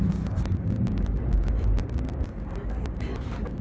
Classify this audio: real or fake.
real